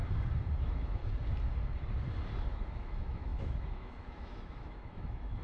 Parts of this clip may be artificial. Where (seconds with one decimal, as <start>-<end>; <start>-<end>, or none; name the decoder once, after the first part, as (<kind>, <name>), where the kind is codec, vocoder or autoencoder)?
0.6-1.0 (autoencoder, DAC-VAE); 2.5-5.4